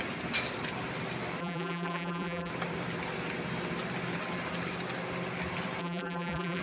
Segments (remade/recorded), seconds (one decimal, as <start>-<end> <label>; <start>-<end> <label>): 0.0-1.4 recorded; 1.4-2.5 remade; 2.5-5.8 recorded; 5.8-6.6 remade